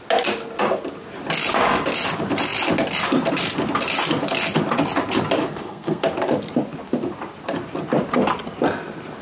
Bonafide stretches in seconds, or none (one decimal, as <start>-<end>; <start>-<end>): 0.0-5.4; 6.0-9.2